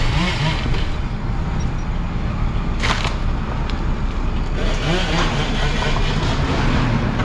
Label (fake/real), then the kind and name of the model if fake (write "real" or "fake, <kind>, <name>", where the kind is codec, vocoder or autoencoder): real